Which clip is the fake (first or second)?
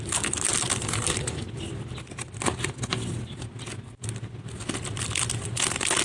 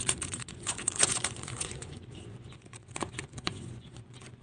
second